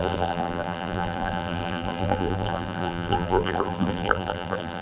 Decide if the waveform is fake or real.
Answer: fake